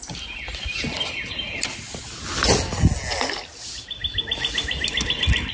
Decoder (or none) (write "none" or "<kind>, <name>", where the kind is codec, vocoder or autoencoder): none